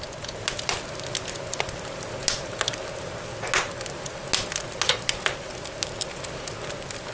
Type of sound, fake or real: real